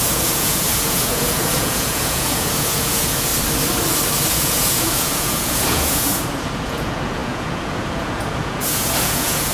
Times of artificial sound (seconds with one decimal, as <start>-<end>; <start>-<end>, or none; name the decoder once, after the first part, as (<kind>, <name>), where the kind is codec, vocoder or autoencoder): 0.0-3.3 (vocoder, Vocos); 4.3-9.5